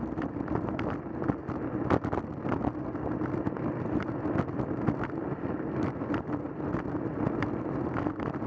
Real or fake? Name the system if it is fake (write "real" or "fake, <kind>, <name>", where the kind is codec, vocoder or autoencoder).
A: real